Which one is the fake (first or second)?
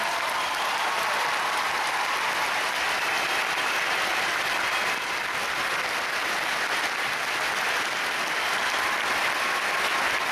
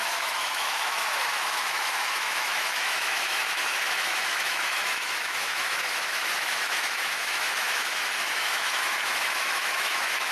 second